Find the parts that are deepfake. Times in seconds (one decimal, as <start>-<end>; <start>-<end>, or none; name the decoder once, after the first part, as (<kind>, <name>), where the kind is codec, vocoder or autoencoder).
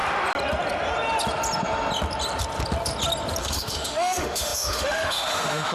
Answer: 3.4-5.7 (autoencoder, DAC-VAE)